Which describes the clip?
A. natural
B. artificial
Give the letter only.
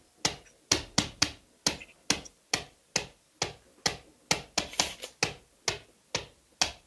A